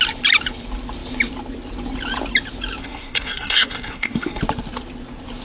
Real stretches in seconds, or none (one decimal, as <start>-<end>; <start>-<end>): 0.0-2.8; 4.4-5.4